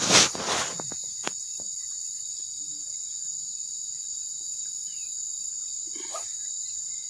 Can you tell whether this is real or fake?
real